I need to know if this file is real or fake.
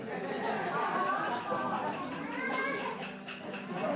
real